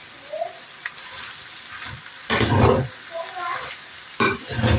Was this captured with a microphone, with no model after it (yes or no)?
yes